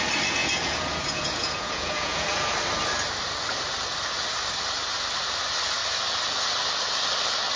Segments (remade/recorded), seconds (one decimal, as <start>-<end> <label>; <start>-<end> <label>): 0.0-0.4 recorded; 0.4-2.5 remade; 2.5-7.6 recorded